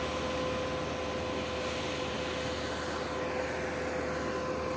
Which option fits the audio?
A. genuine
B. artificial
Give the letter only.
A